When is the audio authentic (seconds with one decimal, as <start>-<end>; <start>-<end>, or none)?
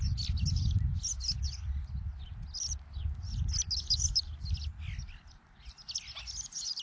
0.0-6.8